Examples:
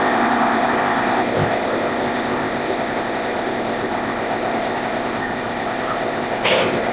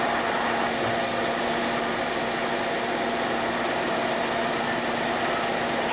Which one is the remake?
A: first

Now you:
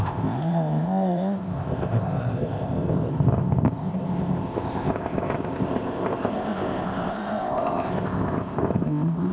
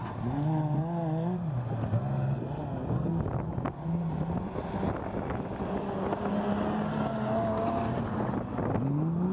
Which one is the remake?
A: first